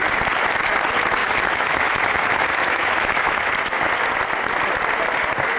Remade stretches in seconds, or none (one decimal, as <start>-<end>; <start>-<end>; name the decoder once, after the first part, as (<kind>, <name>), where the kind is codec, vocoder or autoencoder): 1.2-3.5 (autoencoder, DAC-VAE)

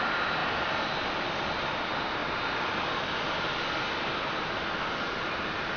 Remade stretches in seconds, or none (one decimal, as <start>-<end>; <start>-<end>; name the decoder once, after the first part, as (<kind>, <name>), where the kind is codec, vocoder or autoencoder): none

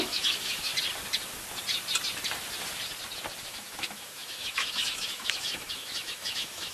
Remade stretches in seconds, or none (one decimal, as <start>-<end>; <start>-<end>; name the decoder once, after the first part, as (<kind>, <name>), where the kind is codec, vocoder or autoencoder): 0.0-0.7 (autoencoder, DAC-VAE); 3.4-6.7